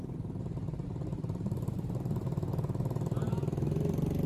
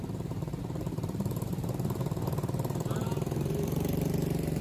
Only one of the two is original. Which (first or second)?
first